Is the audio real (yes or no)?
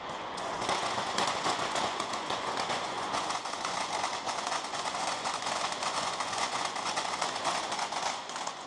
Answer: no